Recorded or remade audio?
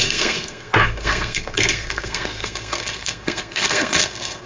remade